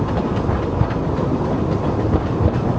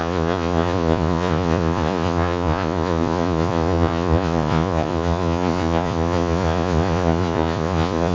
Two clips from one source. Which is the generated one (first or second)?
second